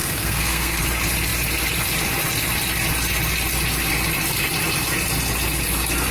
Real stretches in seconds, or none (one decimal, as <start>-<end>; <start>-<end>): 0.8-6.1